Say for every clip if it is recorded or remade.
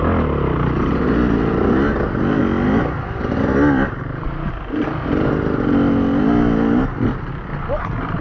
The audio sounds recorded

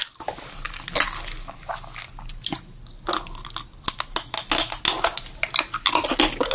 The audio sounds recorded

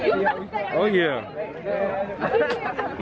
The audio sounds recorded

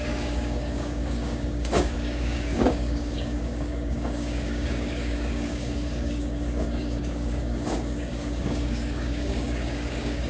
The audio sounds remade